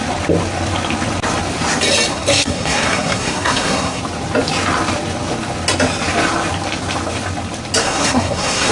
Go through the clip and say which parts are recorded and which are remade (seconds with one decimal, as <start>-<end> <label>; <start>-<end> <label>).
0.0-2.1 recorded; 2.1-4.0 remade; 4.0-7.8 recorded; 7.8-8.7 remade